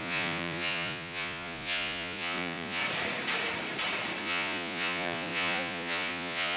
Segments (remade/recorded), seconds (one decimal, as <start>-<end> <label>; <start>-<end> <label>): 0.0-2.8 remade; 2.8-4.2 recorded; 4.2-6.6 remade